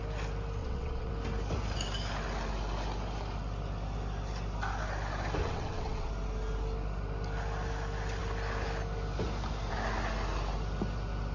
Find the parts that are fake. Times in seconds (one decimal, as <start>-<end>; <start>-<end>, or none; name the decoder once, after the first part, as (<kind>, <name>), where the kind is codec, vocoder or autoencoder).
0.6-1.1 (vocoder, WaveNeXt); 5.4-6.1